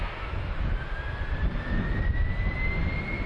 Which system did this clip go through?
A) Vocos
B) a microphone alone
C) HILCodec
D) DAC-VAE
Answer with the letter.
B